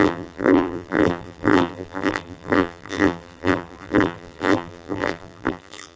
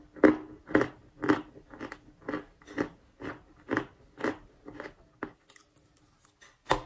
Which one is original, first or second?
second